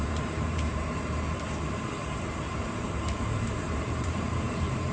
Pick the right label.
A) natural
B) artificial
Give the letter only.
B